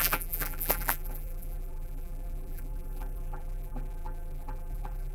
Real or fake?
fake